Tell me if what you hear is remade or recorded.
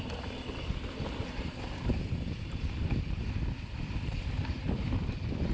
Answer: remade